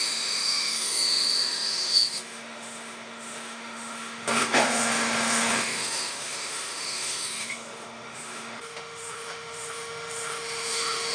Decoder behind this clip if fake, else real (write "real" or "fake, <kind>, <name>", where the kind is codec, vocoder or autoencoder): fake, autoencoder, DAC-VAE